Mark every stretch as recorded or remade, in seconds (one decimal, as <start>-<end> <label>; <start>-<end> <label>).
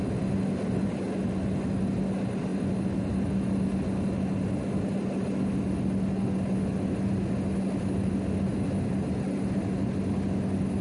0.0-10.8 recorded